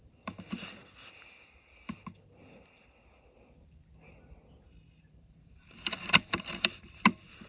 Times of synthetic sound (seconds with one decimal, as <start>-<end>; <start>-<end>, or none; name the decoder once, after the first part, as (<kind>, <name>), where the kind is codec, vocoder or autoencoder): 0.0-0.7 (vocoder, BigVGAN v2); 5.1-7.5